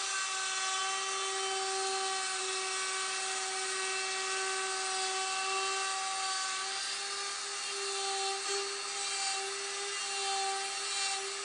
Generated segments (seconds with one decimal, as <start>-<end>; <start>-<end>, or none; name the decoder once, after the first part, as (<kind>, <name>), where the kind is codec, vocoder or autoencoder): none